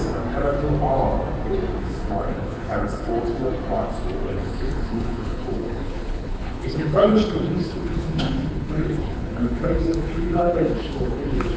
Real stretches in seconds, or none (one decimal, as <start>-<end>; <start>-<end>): 0.0-1.8; 3.1-4.3